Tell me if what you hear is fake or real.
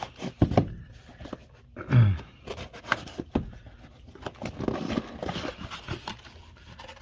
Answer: real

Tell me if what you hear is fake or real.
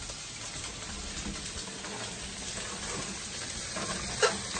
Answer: real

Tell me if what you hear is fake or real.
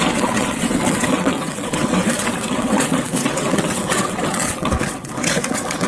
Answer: fake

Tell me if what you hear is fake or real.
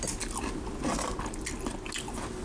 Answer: real